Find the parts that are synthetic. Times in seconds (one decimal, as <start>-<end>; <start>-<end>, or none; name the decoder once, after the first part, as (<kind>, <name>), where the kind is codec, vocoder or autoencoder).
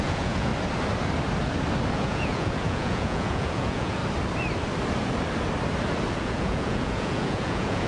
0.0-0.5 (vocoder, Vocos); 1.9-4.0; 6.1-7.9